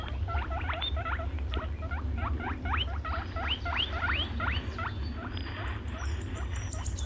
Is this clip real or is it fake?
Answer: real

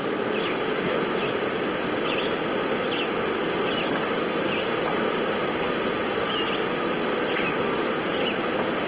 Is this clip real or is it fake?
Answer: real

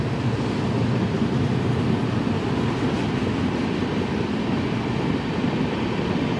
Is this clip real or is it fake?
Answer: real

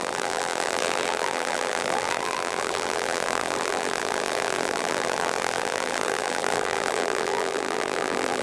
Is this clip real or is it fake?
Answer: fake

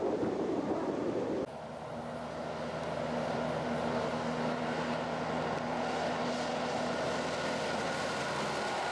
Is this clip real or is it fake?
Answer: real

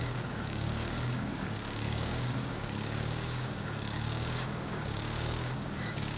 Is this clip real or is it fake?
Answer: fake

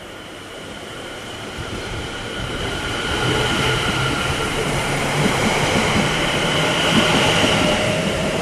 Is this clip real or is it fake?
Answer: fake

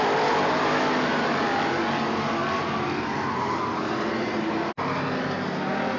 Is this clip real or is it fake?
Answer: real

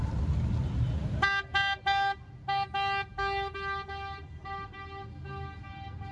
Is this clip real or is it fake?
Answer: real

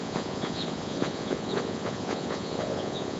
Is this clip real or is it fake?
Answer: fake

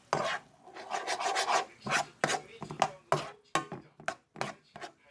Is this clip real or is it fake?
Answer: real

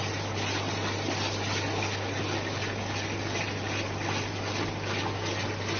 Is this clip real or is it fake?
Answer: real